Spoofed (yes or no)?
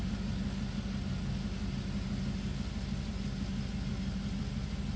no